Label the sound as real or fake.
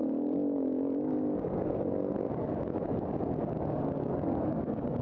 fake